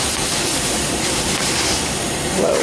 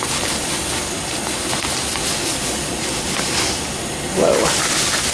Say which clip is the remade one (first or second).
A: first